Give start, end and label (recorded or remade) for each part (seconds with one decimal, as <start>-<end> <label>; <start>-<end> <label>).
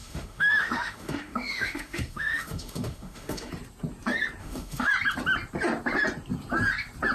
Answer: 0.0-3.5 remade; 3.5-4.4 recorded; 4.4-4.9 remade; 4.9-7.1 recorded